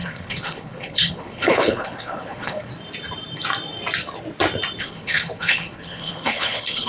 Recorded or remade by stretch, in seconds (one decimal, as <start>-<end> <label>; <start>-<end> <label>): 0.0-2.7 remade; 2.7-4.8 recorded; 4.8-6.9 remade